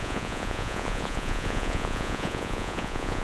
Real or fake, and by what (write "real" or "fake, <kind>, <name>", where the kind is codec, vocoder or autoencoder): fake, vocoder, Vocos